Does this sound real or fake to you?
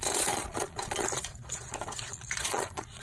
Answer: fake